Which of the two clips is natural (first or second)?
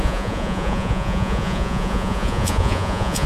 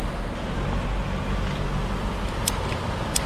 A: second